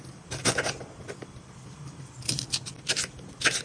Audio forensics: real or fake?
real